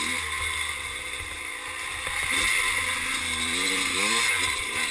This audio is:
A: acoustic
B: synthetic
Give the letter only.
A